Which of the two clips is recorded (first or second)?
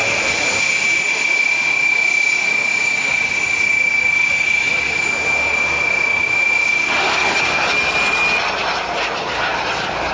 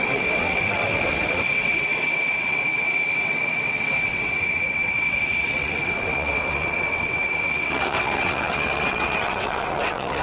first